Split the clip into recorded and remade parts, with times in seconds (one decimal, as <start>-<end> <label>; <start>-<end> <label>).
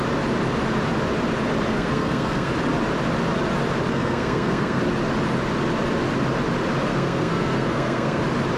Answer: 0.0-1.7 recorded; 1.7-2.5 remade; 2.5-3.9 recorded; 3.9-4.8 remade; 4.8-6.9 recorded; 6.9-8.2 remade; 8.2-8.6 recorded